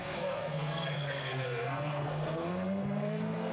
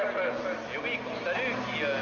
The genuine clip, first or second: second